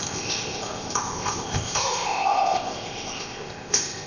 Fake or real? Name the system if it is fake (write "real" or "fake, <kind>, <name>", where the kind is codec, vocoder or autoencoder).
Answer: fake, codec, ZipCodec